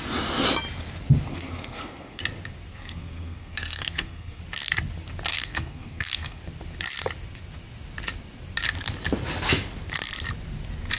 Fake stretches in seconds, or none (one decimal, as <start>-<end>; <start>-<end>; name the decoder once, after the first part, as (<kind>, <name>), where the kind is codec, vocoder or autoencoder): 1.3-2.2 (codec, SNAC); 2.7-4.4; 5.3-6.4